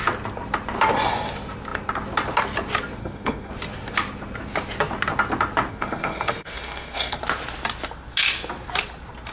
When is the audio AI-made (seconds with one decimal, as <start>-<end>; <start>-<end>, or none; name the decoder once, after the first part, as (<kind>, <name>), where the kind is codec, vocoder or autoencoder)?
3.0-3.5 (codec, SNAC); 5.7-7.2